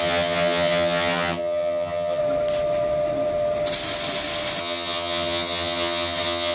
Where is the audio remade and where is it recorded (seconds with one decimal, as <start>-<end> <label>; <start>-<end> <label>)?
0.0-2.2 remade; 2.2-4.6 recorded; 4.6-6.5 remade